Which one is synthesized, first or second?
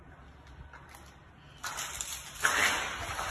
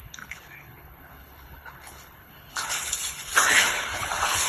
second